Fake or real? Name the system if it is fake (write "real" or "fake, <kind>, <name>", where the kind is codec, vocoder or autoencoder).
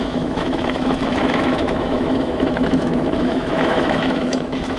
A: fake, autoencoder, DAC-VAE